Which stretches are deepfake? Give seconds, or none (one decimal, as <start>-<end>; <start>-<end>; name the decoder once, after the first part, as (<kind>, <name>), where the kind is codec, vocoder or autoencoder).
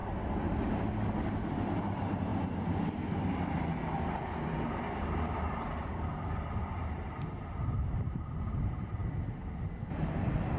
1.5-2.3 (vocoder, BigVGAN v2); 4.3-9.0